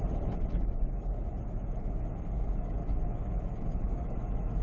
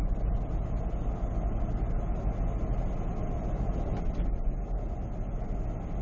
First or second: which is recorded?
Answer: second